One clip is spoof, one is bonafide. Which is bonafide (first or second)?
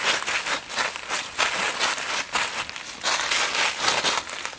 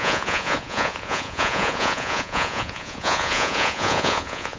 first